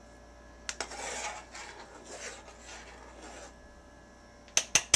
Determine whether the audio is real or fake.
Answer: real